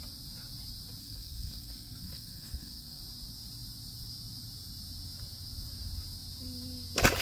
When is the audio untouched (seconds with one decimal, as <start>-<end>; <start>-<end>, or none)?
0.0-1.0; 3.0-7.2